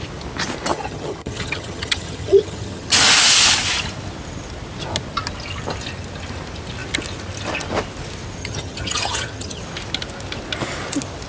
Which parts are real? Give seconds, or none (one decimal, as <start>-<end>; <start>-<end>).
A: 0.0-0.7; 2.9-8.4; 9.6-11.3